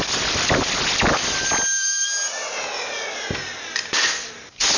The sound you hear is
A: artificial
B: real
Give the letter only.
B